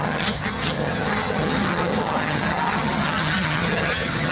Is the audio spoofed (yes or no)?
yes